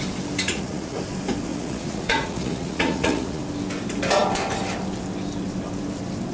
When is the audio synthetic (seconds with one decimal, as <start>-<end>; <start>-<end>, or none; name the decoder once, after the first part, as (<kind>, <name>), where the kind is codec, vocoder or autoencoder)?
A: 0.5-1.0 (vocoder, Vocos); 1.5-3.4